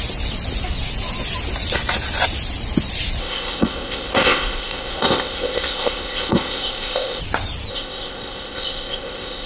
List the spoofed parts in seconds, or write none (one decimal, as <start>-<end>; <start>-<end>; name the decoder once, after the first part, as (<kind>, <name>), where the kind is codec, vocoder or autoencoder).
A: 3.2-7.2 (codec, ZipCodec); 7.7-9.5